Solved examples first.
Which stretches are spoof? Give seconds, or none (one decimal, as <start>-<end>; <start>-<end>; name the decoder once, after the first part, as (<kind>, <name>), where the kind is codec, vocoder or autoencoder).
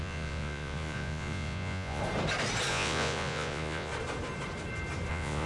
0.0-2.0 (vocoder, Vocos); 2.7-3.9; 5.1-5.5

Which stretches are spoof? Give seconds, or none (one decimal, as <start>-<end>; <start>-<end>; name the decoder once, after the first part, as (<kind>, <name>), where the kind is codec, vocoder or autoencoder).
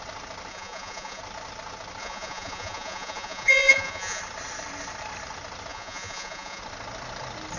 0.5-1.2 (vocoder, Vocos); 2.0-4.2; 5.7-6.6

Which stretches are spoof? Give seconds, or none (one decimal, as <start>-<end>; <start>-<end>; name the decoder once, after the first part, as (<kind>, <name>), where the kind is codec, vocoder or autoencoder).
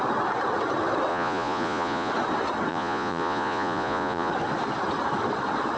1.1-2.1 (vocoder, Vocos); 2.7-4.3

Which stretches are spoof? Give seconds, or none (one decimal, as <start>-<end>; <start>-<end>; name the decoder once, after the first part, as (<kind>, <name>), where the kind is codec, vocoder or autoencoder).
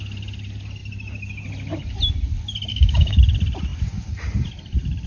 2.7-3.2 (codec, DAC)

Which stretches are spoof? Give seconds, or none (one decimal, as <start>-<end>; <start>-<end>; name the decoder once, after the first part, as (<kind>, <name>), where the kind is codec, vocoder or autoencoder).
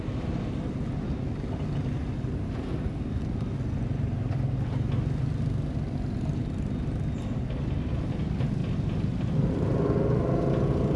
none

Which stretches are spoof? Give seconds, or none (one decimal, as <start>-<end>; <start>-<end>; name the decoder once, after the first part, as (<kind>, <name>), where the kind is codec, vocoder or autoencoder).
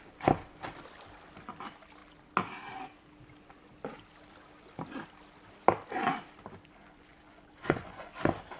6.8-8.2 (vocoder, Vocos)